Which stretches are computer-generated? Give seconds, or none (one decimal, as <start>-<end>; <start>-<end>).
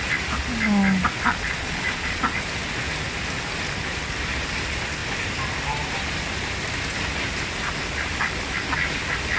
1.3-2.2